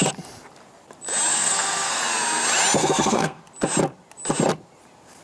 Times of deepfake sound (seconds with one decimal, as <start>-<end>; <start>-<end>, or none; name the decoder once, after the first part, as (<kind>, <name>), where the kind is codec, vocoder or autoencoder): 1.3-2.0 (codec, SNAC); 2.8-3.4